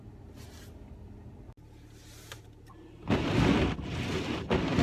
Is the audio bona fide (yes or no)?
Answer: yes